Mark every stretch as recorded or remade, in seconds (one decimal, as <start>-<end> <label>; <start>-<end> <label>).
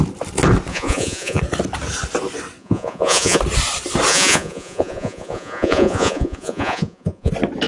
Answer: 0.0-0.7 recorded; 0.7-1.4 remade; 1.4-2.6 recorded; 2.6-3.4 remade; 3.4-4.1 recorded; 4.1-7.3 remade; 7.3-7.7 recorded